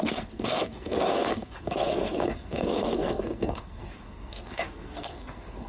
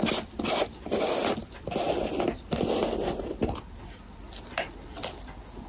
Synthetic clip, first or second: first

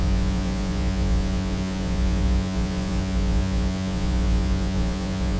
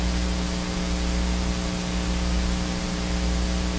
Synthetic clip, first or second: first